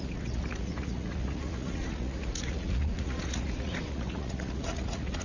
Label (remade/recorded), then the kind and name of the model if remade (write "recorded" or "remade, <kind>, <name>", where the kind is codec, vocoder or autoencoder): remade, vocoder, Vocos